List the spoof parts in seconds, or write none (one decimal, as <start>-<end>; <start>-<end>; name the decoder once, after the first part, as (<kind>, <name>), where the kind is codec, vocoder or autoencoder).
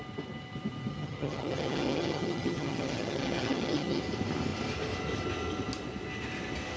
0.9-4.0 (vocoder, HiFi-GAN)